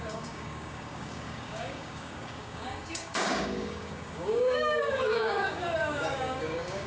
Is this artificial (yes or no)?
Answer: yes